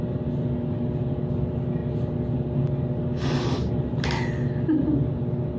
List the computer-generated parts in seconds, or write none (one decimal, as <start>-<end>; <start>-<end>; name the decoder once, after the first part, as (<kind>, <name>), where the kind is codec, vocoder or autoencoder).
none